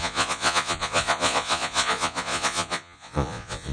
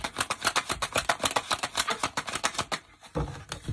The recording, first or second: second